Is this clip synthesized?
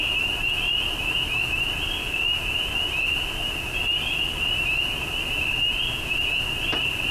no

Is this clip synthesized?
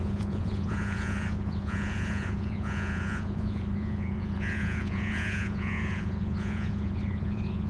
yes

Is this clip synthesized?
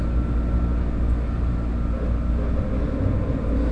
no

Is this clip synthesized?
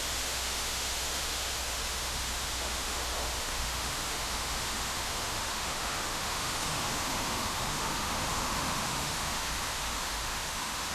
yes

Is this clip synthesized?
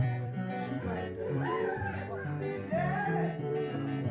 yes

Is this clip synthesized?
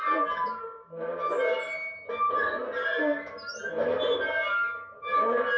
no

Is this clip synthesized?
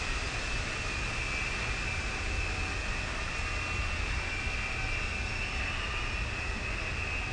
no